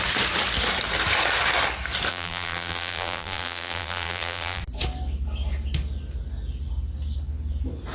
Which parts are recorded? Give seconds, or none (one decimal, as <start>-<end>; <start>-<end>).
0.0-2.1; 4.6-7.9